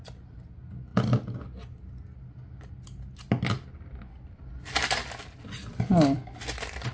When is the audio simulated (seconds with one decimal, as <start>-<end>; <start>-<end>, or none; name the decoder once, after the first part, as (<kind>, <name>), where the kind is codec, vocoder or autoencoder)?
none